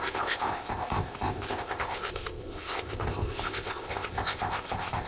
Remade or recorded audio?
remade